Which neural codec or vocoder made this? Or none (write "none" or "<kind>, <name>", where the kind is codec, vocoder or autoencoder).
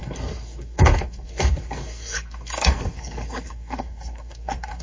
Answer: codec, SNAC